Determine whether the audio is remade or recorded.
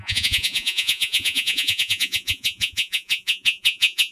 remade